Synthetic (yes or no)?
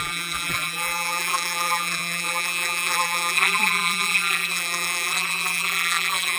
yes